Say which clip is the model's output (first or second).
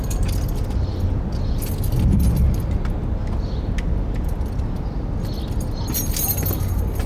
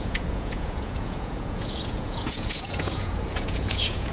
second